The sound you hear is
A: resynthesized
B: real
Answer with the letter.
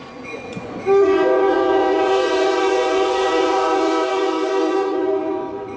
A